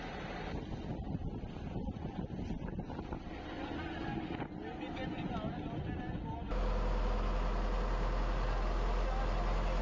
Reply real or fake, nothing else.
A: real